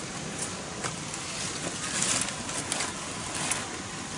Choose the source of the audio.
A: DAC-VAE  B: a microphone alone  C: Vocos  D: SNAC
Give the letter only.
B